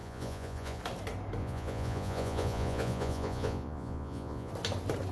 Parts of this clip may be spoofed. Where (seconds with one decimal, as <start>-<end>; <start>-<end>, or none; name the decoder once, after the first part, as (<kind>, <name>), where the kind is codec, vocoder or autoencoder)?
0.0-0.8 (vocoder, Vocos); 1.4-4.5